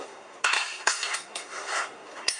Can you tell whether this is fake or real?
fake